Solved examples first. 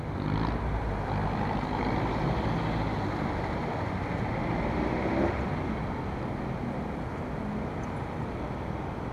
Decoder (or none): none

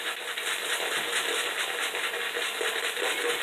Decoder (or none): none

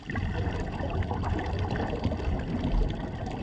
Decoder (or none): none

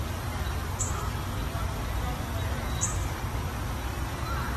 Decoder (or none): none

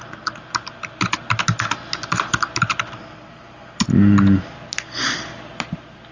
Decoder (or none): none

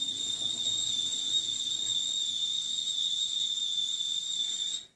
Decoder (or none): none